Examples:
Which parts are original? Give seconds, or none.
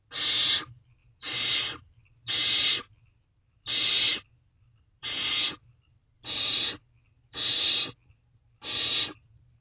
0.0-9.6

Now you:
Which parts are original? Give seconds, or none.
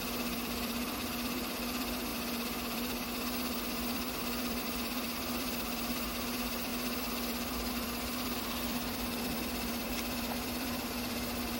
none